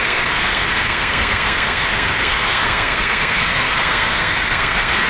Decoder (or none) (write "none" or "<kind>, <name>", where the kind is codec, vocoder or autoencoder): codec, SNAC